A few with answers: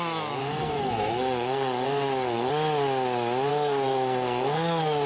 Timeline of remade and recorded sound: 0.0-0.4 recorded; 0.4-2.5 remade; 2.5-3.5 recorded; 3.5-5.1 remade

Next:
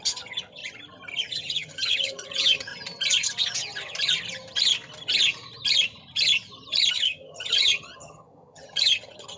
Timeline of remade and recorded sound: 0.0-0.6 remade; 0.6-1.3 recorded; 1.3-2.7 remade; 2.7-6.9 recorded; 6.9-9.4 remade

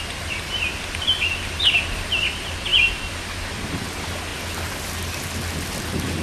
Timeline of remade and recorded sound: 0.0-6.2 recorded

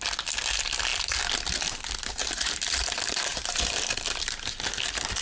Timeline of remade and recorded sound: 0.0-2.2 recorded; 2.2-2.8 remade; 2.8-5.2 recorded

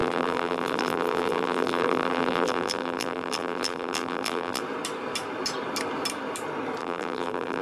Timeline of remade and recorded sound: 0.0-4.6 remade; 4.6-6.8 recorded; 6.8-7.6 remade

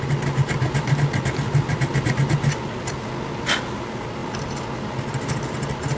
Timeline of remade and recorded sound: 0.0-6.0 recorded

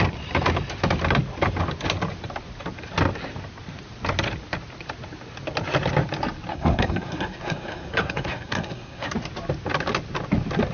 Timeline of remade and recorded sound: 0.0-6.5 recorded; 6.5-9.1 remade; 9.1-10.7 recorded

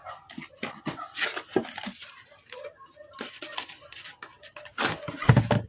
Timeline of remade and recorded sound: 0.0-5.7 recorded